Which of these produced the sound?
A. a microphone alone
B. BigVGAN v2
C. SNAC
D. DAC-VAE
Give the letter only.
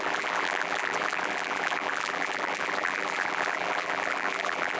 B